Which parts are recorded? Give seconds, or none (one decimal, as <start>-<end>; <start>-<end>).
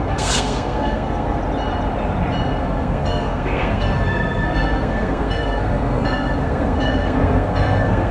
1.4-2.6